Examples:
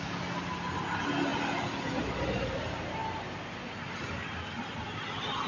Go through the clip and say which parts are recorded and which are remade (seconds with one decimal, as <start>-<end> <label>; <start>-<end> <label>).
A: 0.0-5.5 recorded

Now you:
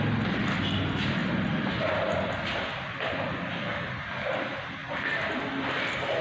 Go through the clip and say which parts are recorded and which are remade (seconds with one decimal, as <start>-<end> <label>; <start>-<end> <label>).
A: 0.0-6.2 recorded

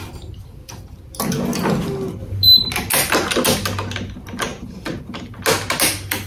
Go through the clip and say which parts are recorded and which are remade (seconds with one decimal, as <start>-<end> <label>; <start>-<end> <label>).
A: 0.0-4.5 recorded; 4.5-5.2 remade; 5.2-6.3 recorded